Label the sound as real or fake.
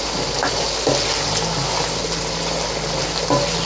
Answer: real